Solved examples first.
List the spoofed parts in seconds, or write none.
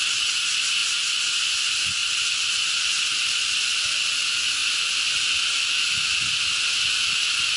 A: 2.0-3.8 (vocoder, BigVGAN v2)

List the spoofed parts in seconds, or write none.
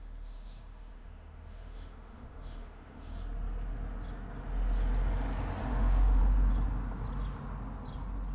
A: 0.0-3.2 (autoencoder, DAC-VAE); 5.7-6.2